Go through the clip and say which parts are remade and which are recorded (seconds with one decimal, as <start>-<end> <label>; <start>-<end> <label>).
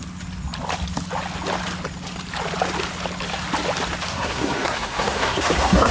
0.0-4.1 recorded; 4.1-5.9 remade